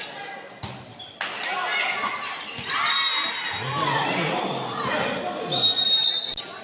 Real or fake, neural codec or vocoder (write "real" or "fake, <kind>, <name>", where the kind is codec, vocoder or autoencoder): real